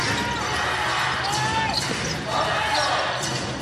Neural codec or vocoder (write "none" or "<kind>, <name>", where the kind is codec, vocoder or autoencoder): none